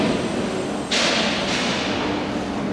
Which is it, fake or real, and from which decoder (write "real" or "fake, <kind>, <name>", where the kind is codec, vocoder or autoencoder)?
real